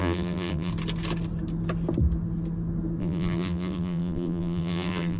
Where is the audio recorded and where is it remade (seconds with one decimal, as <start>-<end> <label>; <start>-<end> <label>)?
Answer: 0.0-0.7 remade; 0.7-3.0 recorded; 3.0-5.2 remade